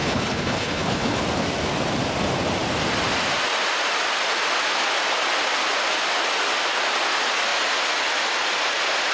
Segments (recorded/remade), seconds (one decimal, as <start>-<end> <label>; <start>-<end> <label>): 0.0-1.2 remade; 1.2-9.1 recorded